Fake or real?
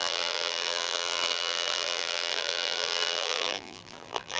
fake